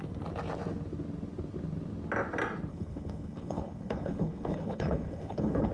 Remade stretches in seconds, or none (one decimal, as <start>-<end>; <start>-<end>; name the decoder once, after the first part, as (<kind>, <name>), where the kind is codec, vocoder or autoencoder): 2.7-5.7 (codec, HILCodec)